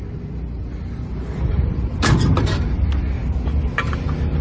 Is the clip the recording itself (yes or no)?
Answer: yes